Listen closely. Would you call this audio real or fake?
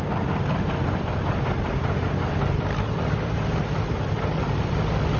real